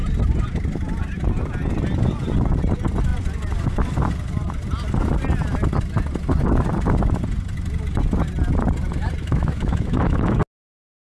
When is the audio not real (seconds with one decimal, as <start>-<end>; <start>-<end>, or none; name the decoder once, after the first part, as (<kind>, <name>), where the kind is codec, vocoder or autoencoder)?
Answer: 9.2-10.4 (autoencoder, DAC-VAE)